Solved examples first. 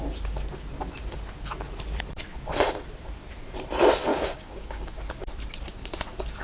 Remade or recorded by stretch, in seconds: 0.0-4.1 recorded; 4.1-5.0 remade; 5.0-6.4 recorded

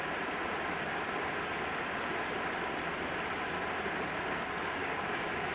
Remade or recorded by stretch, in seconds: 0.0-4.8 recorded; 4.8-5.5 remade

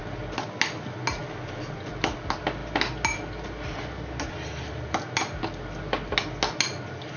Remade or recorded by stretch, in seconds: 0.0-7.2 recorded

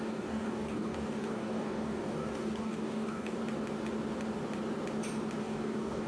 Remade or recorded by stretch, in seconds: 0.0-3.4 remade; 3.4-5.4 recorded; 5.4-6.1 remade

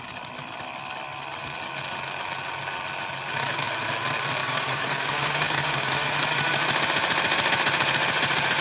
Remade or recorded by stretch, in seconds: 0.0-4.4 recorded; 4.4-6.1 remade; 6.1-8.6 recorded